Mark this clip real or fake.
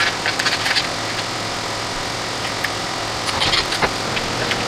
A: real